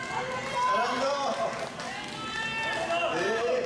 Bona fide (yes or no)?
yes